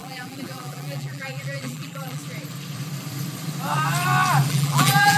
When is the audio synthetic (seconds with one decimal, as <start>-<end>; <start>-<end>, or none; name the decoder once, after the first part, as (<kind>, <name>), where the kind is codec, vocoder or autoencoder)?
0.0-2.2 (vocoder, BigVGAN v2); 4.5-5.2